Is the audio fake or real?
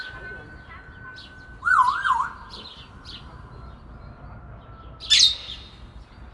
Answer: real